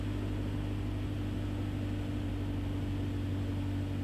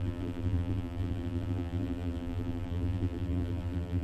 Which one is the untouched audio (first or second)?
first